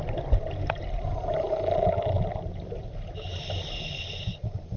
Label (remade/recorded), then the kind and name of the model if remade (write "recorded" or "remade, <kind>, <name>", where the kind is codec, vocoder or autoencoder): recorded